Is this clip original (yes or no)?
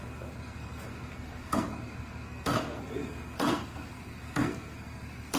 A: no